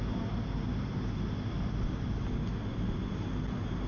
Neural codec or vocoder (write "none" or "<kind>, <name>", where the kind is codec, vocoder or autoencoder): none